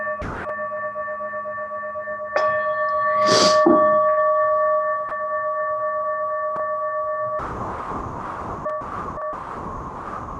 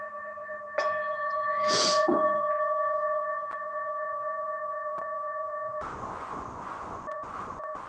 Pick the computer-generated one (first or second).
second